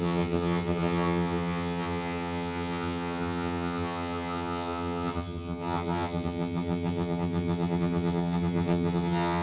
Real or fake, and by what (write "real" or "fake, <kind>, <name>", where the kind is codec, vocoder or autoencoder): fake, vocoder, HiFi-GAN